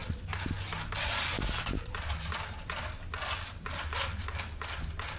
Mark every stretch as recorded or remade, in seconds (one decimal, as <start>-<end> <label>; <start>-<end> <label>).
0.0-5.2 recorded